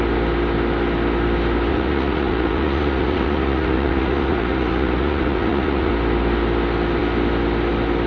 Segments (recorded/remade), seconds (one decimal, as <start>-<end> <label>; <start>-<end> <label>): 0.0-1.7 recorded; 1.7-5.9 remade; 5.9-8.1 recorded